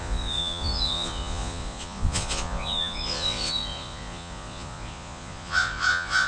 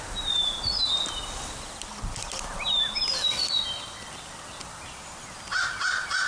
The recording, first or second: second